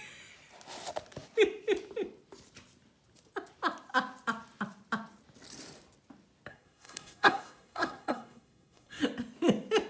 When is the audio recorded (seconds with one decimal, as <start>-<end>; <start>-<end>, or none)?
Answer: 0.0-6.5; 9.0-9.9